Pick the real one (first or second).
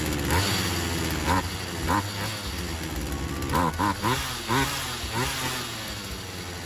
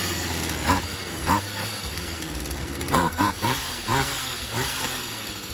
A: first